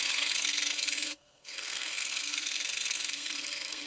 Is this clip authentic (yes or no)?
no